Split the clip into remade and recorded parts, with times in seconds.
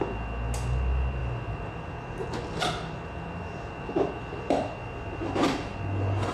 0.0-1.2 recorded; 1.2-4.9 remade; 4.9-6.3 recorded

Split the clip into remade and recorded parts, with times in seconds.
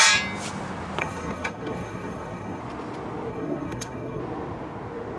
0.0-1.0 recorded; 1.0-2.6 remade; 2.6-3.3 recorded; 3.3-4.2 remade; 4.2-5.2 recorded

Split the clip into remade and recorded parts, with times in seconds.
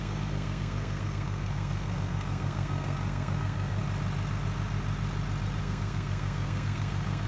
0.0-3.8 remade; 3.8-5.6 recorded; 5.6-7.3 remade